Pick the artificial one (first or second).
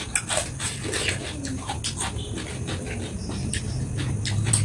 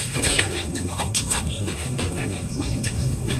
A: second